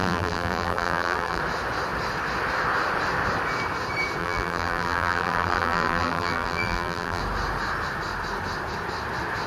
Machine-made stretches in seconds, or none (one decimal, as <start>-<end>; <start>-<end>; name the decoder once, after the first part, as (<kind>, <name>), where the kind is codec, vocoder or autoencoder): 0.0-1.4 (vocoder, BigVGAN v2); 4.2-7.2